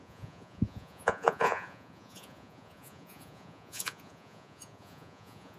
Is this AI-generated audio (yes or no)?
yes